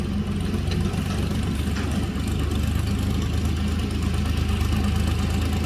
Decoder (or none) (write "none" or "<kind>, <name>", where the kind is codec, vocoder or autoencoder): none